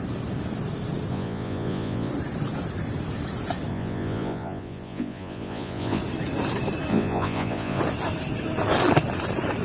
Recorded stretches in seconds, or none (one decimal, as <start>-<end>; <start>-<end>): 0.0-1.1; 2.1-3.7; 6.0-6.9; 7.8-9.6